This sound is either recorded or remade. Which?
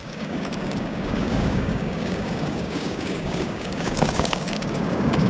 remade